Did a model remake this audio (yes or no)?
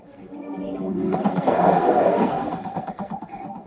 yes